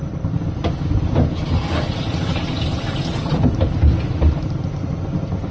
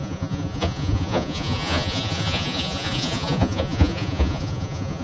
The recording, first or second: first